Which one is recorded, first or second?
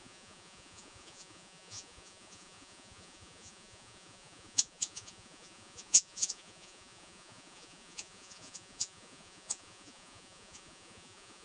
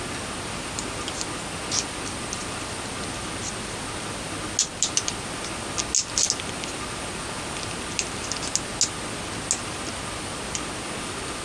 second